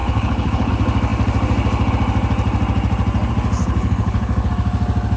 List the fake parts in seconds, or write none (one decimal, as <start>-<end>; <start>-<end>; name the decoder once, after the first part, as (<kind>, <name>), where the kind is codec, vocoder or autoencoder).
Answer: 0.0-0.7 (codec, HILCodec); 3.6-4.5